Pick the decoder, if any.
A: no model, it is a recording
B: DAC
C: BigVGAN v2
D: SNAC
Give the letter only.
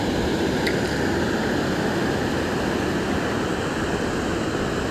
A